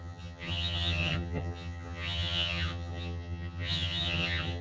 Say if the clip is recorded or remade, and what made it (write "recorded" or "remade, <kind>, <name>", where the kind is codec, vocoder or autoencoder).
remade, vocoder, HiFi-GAN